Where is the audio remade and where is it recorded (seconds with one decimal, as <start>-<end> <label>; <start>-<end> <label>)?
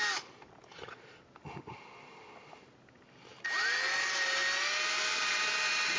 0.0-6.0 recorded